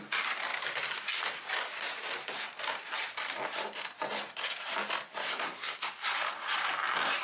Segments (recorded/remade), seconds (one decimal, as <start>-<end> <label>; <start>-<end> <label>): 0.0-5.3 recorded; 5.3-5.9 remade; 5.9-7.2 recorded

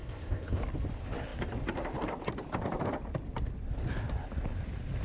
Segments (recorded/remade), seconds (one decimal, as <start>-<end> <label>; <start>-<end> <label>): 0.0-0.6 remade; 0.6-5.0 recorded

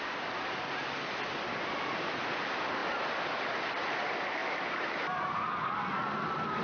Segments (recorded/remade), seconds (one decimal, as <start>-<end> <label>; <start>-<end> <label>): 0.0-6.6 recorded

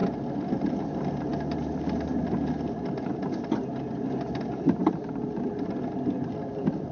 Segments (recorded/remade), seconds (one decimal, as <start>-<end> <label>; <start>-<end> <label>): 0.0-6.9 recorded

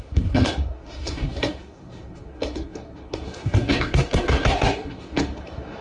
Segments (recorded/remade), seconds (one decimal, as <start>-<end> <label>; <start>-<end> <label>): 0.0-5.8 remade